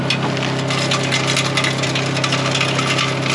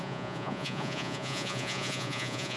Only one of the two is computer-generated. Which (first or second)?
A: second